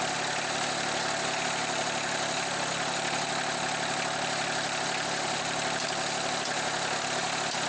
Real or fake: real